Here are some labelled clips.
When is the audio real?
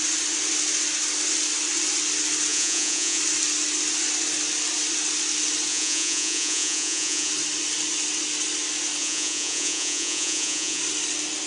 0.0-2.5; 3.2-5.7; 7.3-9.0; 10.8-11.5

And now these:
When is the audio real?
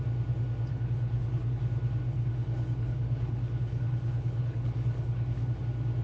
0.0-0.7; 1.6-2.0; 5.6-6.0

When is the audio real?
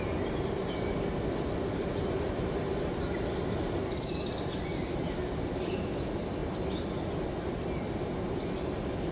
0.0-9.1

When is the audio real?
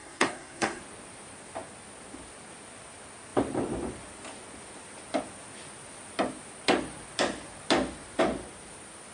0.8-9.1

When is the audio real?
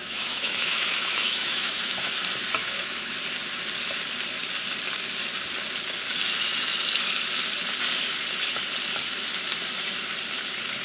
2.1-2.6; 3.1-10.8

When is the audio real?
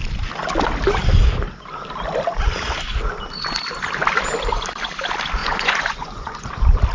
0.0-5.4; 6.5-6.9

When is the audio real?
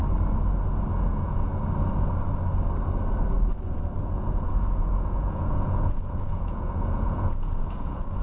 0.0-1.1; 1.5-4.0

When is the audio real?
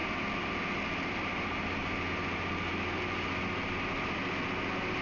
0.0-5.0